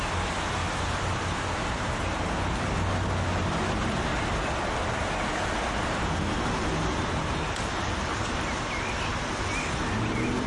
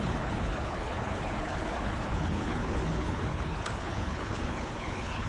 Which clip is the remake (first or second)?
second